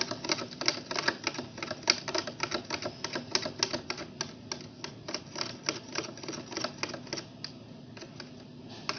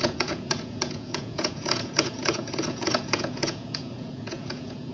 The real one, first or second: first